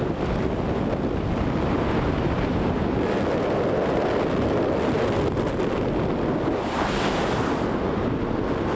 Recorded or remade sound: recorded